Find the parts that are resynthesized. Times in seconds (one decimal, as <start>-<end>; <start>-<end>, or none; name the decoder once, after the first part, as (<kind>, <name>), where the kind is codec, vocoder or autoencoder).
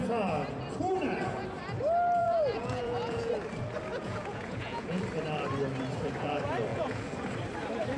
2.2-3.3 (vocoder, Vocos); 3.9-5.0; 6.7-7.2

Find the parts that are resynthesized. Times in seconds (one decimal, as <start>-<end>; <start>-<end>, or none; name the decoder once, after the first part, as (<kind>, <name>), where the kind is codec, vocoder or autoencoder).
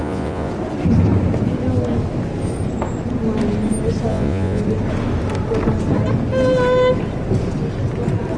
0.0-0.5 (vocoder, Vocos); 4.1-4.6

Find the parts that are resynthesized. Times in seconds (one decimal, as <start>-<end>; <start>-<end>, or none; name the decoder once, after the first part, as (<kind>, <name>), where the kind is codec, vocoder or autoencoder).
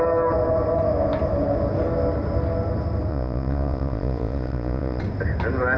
3.1-5.0 (vocoder, Vocos)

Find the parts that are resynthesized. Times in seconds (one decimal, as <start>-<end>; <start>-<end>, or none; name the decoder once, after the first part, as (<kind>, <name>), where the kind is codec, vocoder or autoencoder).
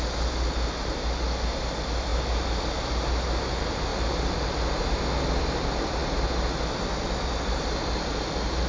none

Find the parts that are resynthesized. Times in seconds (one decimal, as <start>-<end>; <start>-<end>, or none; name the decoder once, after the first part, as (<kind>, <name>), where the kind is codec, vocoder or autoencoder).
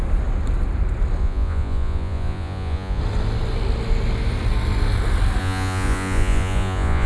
1.2-3.0 (vocoder, Vocos); 5.4-7.1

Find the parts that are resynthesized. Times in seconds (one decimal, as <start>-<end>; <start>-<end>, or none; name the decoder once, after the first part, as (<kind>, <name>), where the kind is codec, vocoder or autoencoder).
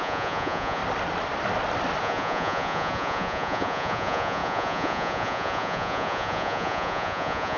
0.0-0.8 (vocoder, Vocos); 2.0-7.6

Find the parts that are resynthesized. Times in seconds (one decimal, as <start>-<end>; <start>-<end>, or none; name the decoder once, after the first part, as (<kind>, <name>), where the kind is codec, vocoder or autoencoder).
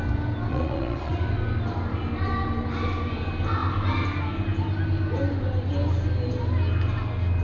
0.5-1.1 (vocoder, Vocos)